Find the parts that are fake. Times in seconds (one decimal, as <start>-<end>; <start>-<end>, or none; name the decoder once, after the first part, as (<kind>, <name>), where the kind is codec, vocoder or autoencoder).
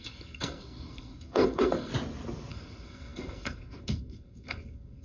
0.0-1.9 (codec, SNAC); 2.5-5.0